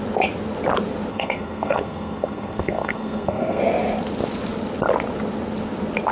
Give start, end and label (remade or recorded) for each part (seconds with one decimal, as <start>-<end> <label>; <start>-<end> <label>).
0.0-1.1 recorded; 1.1-3.6 remade; 3.6-6.1 recorded